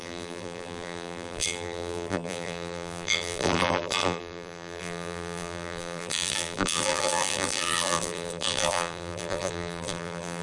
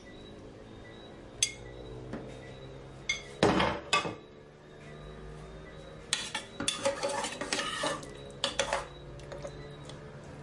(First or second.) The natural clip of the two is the second